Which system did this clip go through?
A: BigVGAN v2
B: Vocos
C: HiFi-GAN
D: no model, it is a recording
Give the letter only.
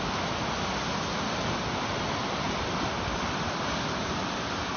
D